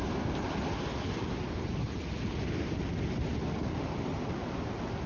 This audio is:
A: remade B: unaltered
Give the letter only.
B